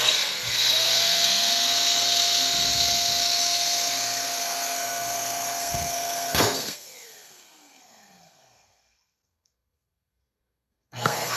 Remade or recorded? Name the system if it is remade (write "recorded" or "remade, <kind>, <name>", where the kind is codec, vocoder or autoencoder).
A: remade, codec, SNAC